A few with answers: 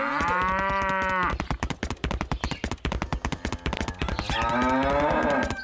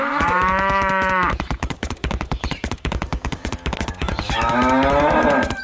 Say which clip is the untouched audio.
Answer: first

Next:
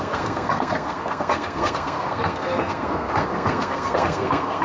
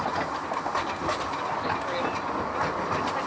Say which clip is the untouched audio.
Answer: second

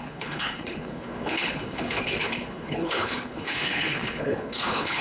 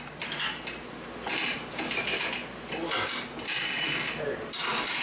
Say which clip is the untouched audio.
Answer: second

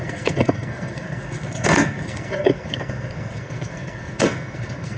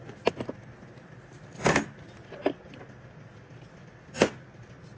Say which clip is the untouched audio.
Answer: second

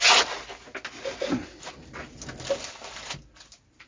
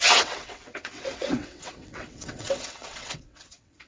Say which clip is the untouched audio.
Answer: first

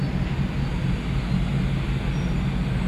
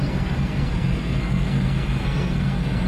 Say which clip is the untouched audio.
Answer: first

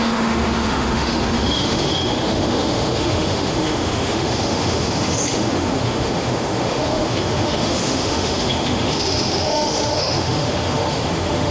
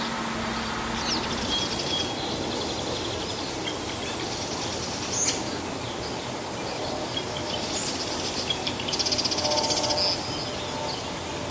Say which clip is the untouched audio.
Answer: second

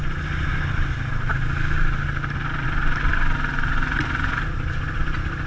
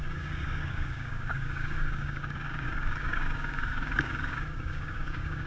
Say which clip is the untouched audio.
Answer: first